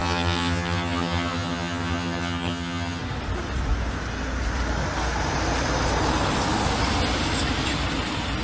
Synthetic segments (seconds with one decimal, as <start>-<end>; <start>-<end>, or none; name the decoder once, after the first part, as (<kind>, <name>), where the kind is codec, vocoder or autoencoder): 0.0-3.0 (vocoder, HiFi-GAN)